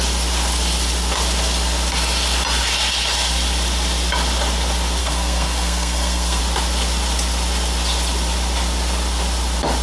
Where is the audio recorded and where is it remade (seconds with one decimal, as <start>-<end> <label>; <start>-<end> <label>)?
0.0-5.0 recorded; 5.0-6.4 remade; 6.4-9.8 recorded